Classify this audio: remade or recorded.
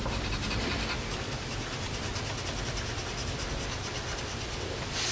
recorded